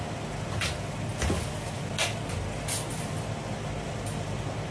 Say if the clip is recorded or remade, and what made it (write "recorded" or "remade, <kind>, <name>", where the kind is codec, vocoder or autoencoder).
recorded